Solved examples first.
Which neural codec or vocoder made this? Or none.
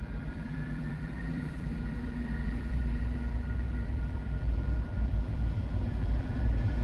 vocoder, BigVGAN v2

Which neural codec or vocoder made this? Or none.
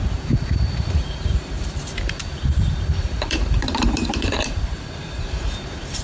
vocoder, BigVGAN v2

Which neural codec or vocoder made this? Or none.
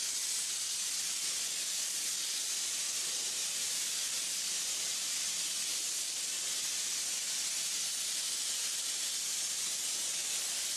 none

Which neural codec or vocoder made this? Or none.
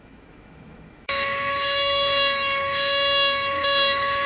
autoencoder, DAC-VAE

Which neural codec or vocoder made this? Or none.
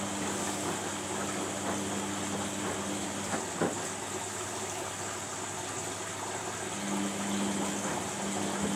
vocoder, BigVGAN v2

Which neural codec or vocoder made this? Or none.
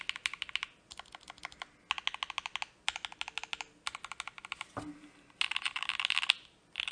none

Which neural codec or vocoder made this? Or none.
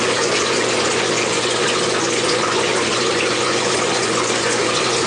vocoder, Vocos